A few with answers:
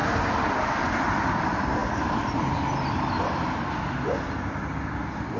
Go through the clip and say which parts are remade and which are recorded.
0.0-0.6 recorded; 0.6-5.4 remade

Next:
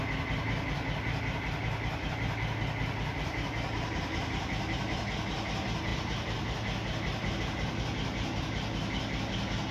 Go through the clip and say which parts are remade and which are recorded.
0.0-9.7 recorded

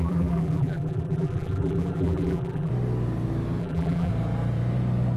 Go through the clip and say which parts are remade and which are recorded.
0.0-2.7 remade; 2.7-3.6 recorded; 3.6-4.1 remade; 4.1-5.2 recorded

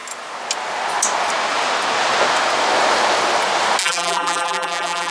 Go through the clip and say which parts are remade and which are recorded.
0.0-3.8 recorded; 3.8-5.1 remade

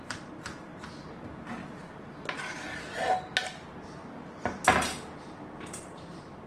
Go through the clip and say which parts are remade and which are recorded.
0.0-0.7 remade; 0.7-1.2 recorded; 1.2-1.6 remade; 1.6-5.2 recorded; 5.2-6.5 remade

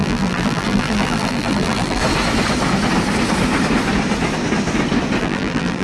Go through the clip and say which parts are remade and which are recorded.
0.0-2.0 remade; 2.0-5.2 recorded; 5.2-5.8 remade

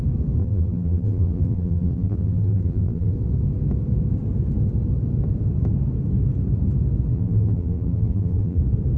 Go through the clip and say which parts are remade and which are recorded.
0.0-0.4 recorded; 0.4-3.1 remade; 3.1-7.1 recorded; 7.1-8.6 remade; 8.6-9.0 recorded

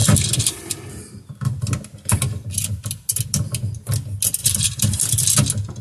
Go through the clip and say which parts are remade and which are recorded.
0.0-4.4 recorded; 4.4-5.0 remade; 5.0-5.8 recorded